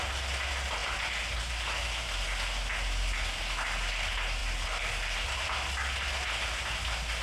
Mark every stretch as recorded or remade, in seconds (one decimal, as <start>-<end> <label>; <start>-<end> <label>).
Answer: 0.0-7.2 recorded